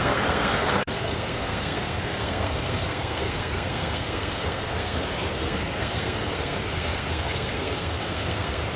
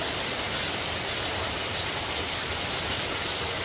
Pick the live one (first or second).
second